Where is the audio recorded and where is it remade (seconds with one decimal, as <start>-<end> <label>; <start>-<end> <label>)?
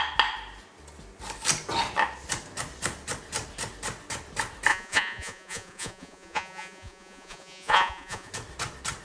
0.0-4.7 recorded; 4.7-8.3 remade; 8.3-9.0 recorded